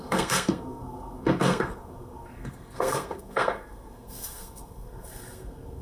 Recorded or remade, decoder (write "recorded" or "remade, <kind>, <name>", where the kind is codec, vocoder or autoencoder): remade, codec, SNAC